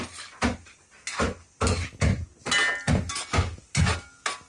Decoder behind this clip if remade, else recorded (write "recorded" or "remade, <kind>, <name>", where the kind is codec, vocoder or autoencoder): recorded